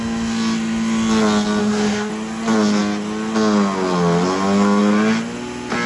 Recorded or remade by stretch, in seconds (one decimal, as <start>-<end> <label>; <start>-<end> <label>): 0.0-1.6 recorded; 1.6-2.1 remade; 2.1-5.9 recorded